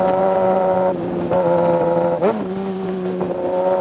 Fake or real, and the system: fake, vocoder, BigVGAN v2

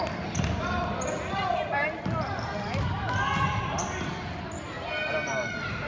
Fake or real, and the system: real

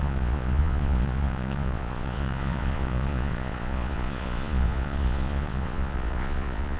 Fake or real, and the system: fake, vocoder, Vocos